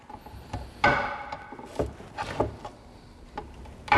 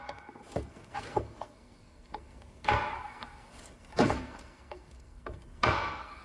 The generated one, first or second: second